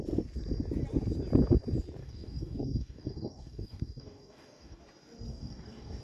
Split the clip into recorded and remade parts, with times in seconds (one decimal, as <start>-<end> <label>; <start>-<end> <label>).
0.0-2.0 recorded; 2.0-4.8 remade; 4.8-5.3 recorded; 5.3-6.0 remade